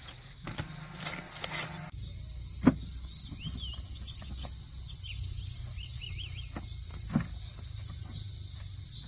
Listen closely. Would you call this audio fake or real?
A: real